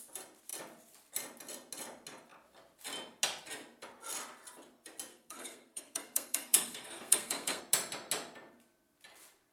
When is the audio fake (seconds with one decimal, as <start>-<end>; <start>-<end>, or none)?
5.1-7.6